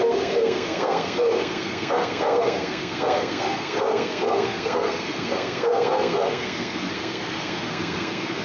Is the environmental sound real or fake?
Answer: fake